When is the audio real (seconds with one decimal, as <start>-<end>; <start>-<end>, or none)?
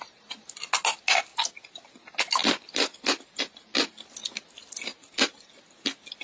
0.0-6.2